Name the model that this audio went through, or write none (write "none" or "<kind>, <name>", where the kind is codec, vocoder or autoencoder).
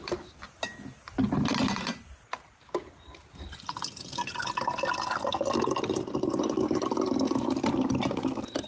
none